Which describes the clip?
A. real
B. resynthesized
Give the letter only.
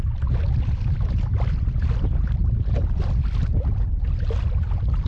A